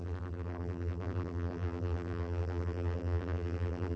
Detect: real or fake fake